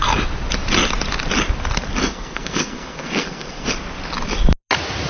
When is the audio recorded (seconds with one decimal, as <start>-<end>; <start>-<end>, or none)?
0.0-2.0; 3.7-5.1